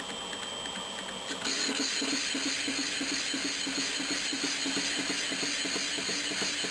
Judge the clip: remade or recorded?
recorded